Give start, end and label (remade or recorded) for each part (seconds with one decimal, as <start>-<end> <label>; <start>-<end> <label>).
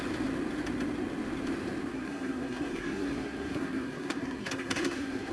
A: 0.0-1.9 recorded; 1.9-5.3 remade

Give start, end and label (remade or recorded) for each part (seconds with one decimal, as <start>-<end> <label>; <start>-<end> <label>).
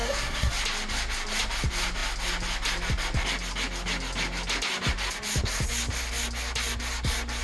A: 0.0-0.5 remade; 0.5-7.4 recorded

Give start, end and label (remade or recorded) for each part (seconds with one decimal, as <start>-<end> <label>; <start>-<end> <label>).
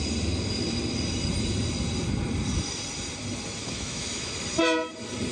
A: 0.0-3.6 recorded; 3.6-4.3 remade; 4.3-5.3 recorded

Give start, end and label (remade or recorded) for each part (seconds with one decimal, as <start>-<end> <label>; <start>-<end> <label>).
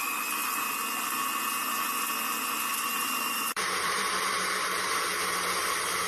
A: 0.0-2.7 recorded; 2.7-5.0 remade; 5.0-6.1 recorded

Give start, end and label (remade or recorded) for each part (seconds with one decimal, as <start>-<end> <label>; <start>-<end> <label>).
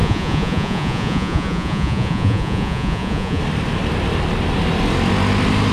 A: 0.0-3.4 remade; 3.4-5.7 recorded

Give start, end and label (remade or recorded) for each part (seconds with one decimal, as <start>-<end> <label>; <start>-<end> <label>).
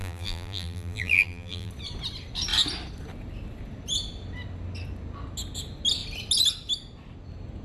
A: 0.0-1.7 remade; 1.7-7.6 recorded